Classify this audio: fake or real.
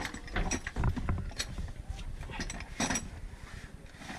real